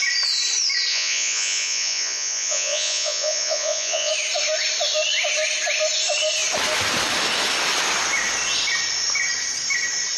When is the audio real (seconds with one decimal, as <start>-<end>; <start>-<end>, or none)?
0.0-0.9; 4.1-10.2